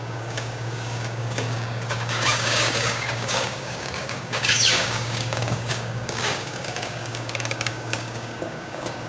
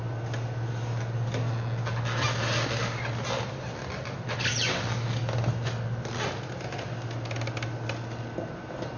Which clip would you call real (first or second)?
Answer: second